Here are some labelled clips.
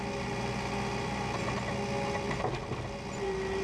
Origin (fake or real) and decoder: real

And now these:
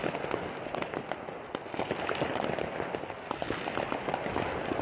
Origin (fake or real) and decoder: real